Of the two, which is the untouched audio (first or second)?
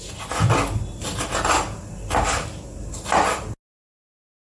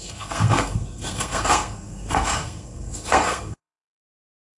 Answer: first